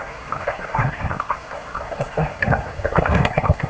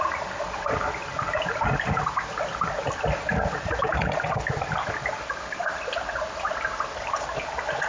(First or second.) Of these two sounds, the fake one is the first